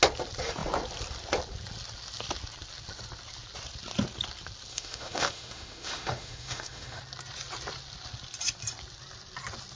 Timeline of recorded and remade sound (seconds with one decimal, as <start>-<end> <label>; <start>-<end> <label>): 0.0-4.7 recorded; 4.7-7.0 remade; 7.0-9.8 recorded

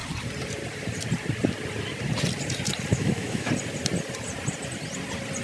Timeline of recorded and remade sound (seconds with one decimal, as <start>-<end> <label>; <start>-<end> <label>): 0.0-2.9 recorded; 2.9-3.5 remade; 3.5-5.4 recorded

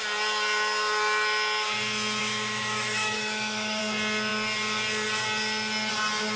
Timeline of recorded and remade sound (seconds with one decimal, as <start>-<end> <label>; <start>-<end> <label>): 0.0-2.2 recorded; 2.2-3.8 remade; 3.8-6.4 recorded

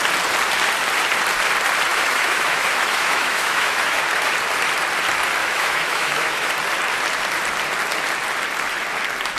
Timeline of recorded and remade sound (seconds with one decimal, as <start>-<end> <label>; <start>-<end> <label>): 0.0-1.9 recorded; 1.9-4.0 remade; 4.0-5.4 recorded; 5.4-6.5 remade; 6.5-9.4 recorded

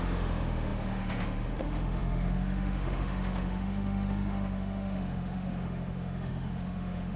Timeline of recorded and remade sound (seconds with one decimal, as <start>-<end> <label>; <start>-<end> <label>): 0.0-7.2 remade

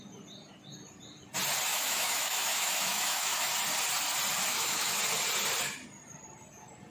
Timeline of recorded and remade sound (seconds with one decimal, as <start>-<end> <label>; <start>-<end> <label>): 0.0-1.7 recorded; 1.7-3.5 remade; 3.5-4.5 recorded; 4.5-5.0 remade; 5.0-6.9 recorded

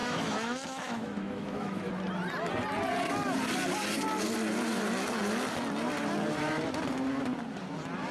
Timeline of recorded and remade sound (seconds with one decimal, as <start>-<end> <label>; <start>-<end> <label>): 0.0-1.9 remade; 1.9-8.1 recorded